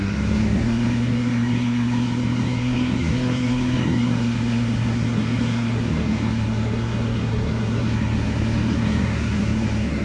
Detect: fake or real fake